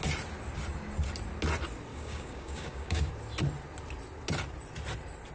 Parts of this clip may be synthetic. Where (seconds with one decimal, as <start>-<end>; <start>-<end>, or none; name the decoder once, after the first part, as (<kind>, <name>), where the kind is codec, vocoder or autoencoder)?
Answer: 1.9-3.1 (codec, DAC)

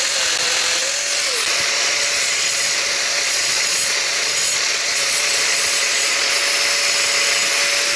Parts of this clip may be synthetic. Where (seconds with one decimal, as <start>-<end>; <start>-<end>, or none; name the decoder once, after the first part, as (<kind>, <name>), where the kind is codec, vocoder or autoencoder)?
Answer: 1.5-6.3 (vocoder, Vocos)